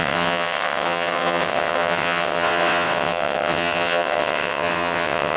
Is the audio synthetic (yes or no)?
yes